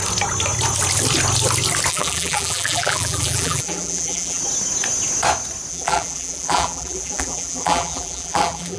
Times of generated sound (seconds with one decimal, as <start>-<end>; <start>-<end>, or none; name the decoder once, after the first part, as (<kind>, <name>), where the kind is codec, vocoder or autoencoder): 1.9-4.4 (vocoder, BigVGAN v2); 5.7-8.8